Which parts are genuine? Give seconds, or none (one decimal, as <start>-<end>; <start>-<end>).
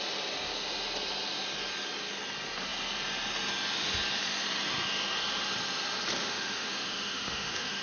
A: 0.0-6.2